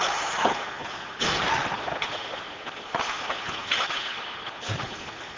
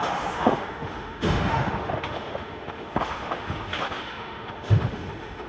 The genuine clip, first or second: first